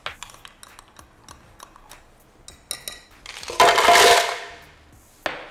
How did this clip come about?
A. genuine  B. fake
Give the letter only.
A